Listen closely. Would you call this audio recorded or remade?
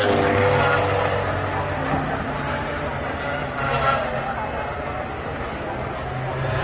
recorded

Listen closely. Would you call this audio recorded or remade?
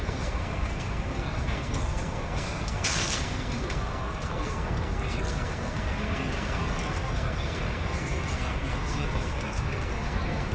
remade